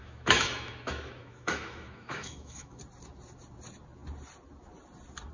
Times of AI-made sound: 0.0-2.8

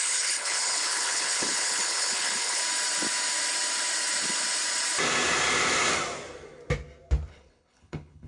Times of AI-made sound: 0.0-2.6; 7.3-8.3

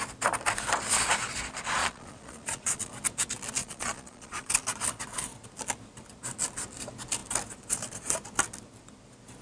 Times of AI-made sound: 1.8-2.9; 3.6-4.5

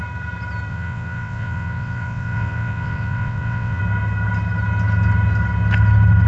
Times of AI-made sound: 0.7-3.8